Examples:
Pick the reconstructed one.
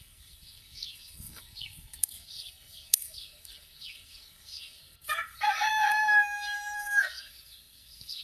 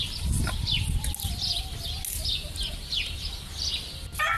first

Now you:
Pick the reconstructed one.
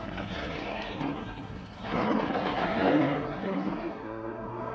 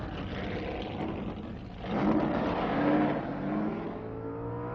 first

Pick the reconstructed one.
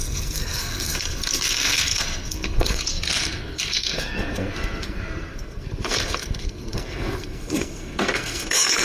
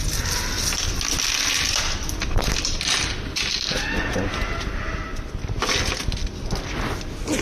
first